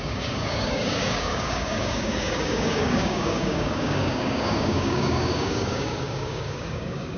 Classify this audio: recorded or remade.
remade